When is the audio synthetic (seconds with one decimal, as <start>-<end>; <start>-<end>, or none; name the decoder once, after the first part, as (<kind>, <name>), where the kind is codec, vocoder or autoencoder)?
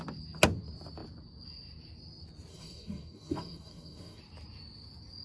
2.5-4.2 (codec, DAC)